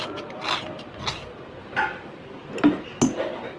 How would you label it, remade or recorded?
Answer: recorded